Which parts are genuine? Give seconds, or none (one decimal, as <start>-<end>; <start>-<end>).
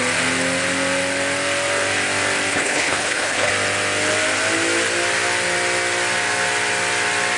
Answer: 0.0-2.5; 3.5-7.4